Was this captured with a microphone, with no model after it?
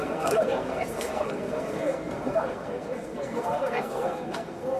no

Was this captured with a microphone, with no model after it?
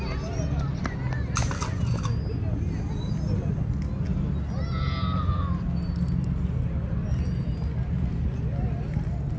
yes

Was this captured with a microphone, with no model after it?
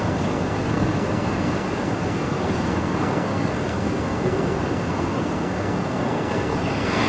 no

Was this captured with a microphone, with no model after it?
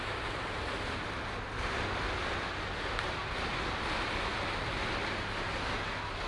yes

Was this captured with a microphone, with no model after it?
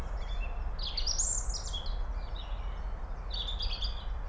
yes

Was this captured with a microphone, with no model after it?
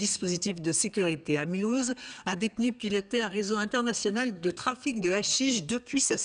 no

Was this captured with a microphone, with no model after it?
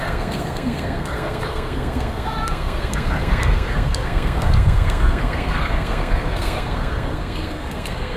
no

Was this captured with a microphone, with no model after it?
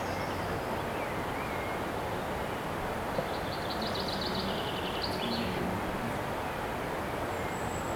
yes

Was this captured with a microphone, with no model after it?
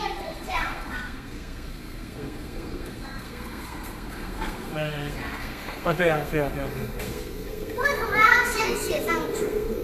no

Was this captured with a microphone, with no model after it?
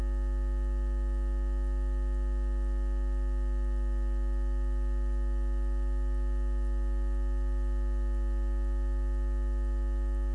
yes